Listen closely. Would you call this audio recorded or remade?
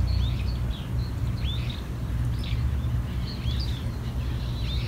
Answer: recorded